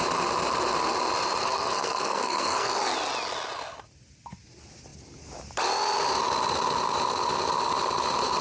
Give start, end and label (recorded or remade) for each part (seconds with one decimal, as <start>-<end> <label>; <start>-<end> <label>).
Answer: 0.0-1.4 recorded; 1.4-2.8 remade; 2.8-8.4 recorded